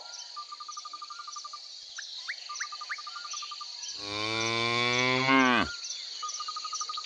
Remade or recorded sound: recorded